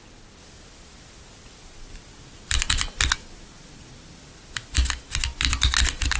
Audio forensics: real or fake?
real